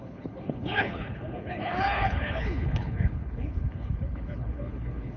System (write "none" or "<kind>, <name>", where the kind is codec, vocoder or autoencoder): codec, HILCodec